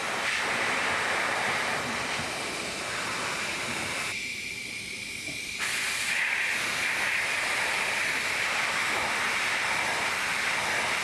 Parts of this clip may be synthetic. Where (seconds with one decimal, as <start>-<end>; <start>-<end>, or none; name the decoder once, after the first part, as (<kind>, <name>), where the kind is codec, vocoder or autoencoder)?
0.0-8.8 (vocoder, BigVGAN v2)